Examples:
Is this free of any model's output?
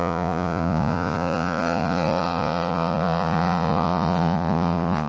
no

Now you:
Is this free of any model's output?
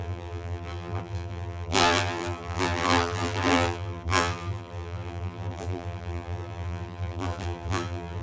no